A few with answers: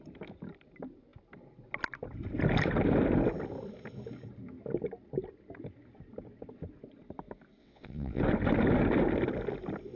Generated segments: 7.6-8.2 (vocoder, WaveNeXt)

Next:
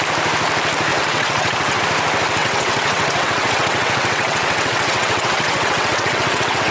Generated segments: 0.9-1.8 (vocoder, WaveNeXt); 2.4-6.7

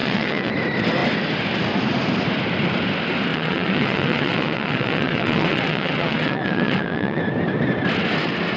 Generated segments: 0.0-0.5 (vocoder, WaveNeXt); 3.3-7.2

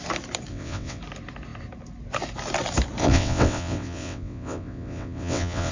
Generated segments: 0.5-1.0 (vocoder, WaveNeXt); 3.0-5.7

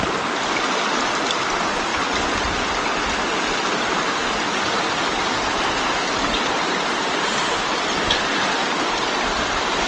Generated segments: none